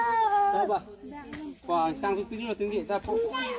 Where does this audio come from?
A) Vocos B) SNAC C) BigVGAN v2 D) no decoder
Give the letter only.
D